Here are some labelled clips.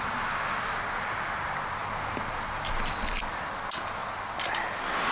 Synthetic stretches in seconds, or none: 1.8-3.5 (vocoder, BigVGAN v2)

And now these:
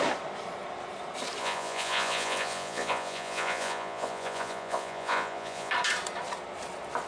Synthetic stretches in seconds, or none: 1.4-5.7 (vocoder, Vocos)

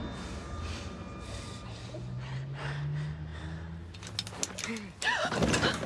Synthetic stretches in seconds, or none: none